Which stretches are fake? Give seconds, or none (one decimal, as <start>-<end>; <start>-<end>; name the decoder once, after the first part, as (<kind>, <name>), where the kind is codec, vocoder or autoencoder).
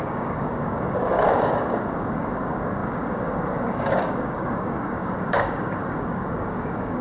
0.0-7.0 (codec, DAC)